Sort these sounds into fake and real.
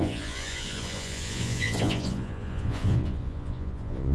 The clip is fake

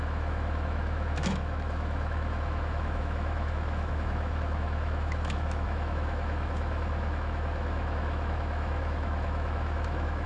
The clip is fake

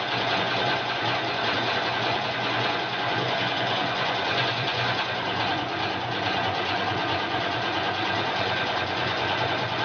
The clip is fake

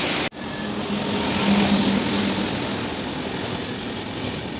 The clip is real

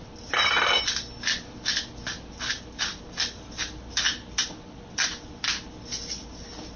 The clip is real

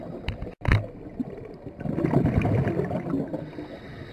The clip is real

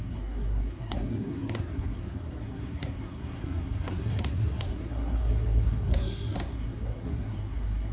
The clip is fake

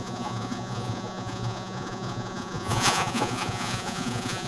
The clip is fake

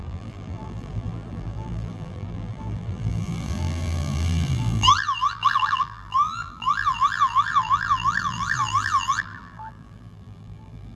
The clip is fake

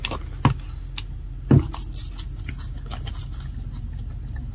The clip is real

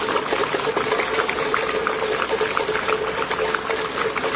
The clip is real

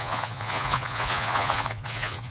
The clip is fake